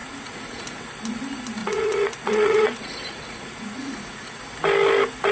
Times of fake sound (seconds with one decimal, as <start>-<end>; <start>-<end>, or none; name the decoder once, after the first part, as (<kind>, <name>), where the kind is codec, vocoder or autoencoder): 0.0-0.8 (vocoder, Vocos); 1.6-4.4